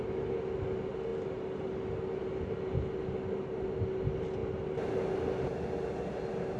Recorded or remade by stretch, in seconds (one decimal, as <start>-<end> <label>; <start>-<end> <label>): 0.0-6.6 recorded